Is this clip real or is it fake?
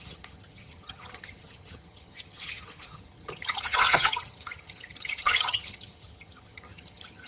fake